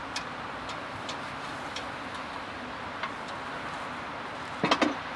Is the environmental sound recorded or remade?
recorded